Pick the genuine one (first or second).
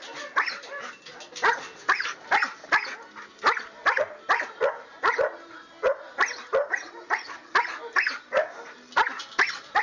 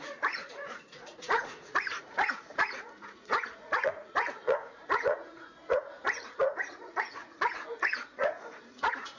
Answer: first